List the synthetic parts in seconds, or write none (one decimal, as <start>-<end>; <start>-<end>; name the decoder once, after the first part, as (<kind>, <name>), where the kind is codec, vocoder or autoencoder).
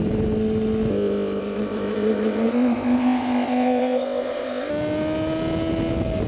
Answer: 0.9-4.7 (codec, ZipCodec)